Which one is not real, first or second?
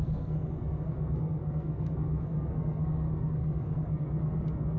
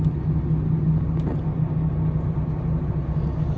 first